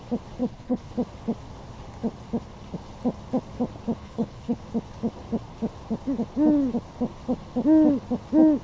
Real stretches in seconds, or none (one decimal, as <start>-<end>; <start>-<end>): 0.0-0.4; 0.9-4.0; 4.6-8.6

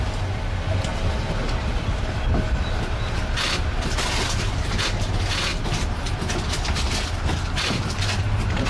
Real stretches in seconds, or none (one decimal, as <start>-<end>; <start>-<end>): 0.0-8.7

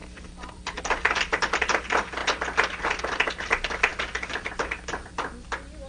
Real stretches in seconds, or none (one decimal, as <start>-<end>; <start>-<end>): 0.8-5.9

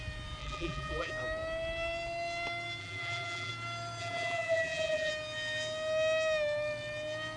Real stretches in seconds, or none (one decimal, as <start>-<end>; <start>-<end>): 0.0-0.4; 1.1-2.8; 3.5-4.0; 5.1-7.4

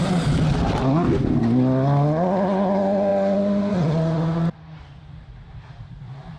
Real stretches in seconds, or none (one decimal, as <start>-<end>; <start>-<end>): 0.0-6.4

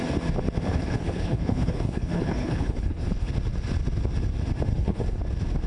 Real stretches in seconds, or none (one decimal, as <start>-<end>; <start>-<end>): 0.0-0.7; 3.3-4.7; 5.2-5.7

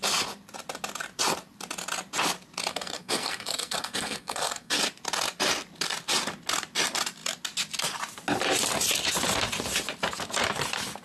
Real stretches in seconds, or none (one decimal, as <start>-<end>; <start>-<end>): 0.0-2.7; 4.8-11.0

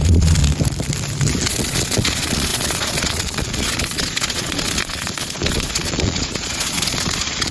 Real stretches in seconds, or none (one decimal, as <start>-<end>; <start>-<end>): 0.4-1.5